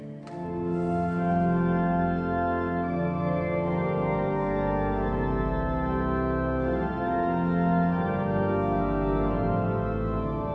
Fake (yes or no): no